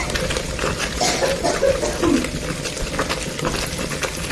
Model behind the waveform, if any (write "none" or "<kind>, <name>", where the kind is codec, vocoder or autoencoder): none